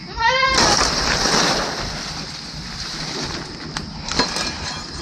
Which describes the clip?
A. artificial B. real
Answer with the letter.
B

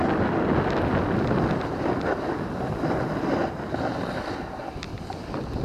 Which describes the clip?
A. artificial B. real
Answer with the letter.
B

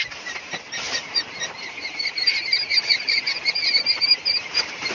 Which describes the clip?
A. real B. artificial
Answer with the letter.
B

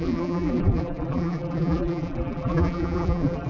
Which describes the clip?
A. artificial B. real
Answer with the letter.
A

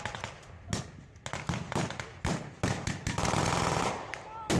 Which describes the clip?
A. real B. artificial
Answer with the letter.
A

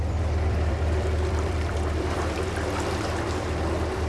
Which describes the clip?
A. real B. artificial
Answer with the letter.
B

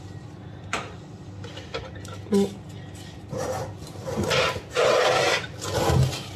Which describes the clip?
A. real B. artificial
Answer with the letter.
A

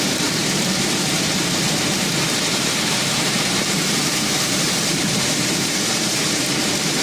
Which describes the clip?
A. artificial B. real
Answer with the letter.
A